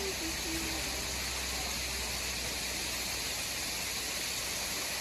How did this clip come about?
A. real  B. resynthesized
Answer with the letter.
A